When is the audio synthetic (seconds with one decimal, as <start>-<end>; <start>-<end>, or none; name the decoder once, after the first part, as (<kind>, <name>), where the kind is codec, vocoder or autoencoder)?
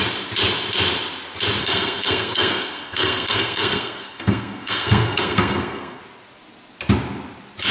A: 1.6-6.0 (codec, SNAC)